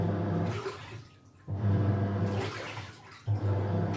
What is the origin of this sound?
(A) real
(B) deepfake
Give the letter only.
A